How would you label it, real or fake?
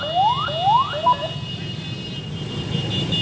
real